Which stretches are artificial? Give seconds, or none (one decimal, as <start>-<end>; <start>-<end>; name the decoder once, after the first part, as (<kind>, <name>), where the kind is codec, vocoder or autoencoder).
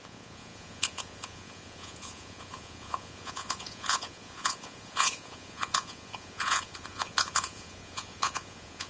0.0-8.9 (vocoder, Vocos)